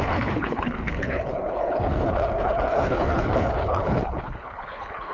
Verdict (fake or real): fake